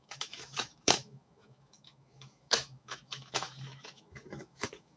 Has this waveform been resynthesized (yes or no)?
yes